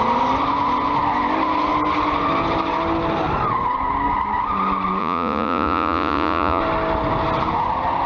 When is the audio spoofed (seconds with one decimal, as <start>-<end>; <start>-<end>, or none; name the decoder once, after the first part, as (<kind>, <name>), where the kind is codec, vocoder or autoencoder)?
5.0-6.6 (vocoder, Vocos)